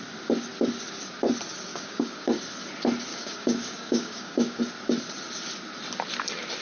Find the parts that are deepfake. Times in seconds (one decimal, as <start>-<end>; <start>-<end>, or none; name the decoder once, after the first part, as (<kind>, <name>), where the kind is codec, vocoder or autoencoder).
1.7-2.4 (codec, DAC); 3.1-4.6